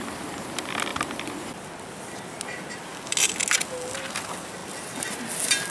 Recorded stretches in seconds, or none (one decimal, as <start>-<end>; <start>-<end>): 0.0-5.7